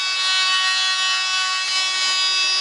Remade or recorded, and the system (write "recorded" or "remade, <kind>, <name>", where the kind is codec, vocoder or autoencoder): recorded